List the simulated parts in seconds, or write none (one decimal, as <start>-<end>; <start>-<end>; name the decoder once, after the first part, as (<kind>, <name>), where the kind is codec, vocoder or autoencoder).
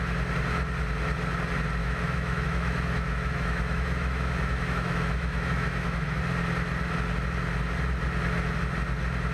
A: 1.8-6.2 (autoencoder, DAC-VAE)